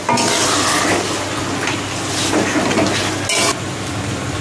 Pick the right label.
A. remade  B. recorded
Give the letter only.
B